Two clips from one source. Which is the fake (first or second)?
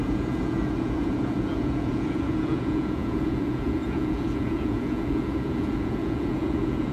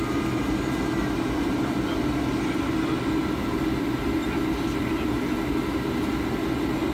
first